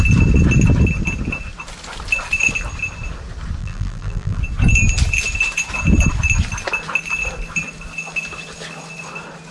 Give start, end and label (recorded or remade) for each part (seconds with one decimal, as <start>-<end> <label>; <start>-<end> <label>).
0.0-3.6 recorded; 3.6-4.4 remade; 4.4-9.5 recorded